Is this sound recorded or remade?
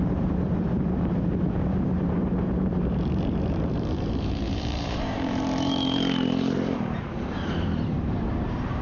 remade